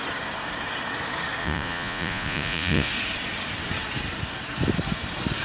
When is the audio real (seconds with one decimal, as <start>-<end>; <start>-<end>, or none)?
0.0-1.4; 2.9-5.4